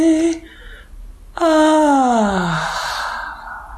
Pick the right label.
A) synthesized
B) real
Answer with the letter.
B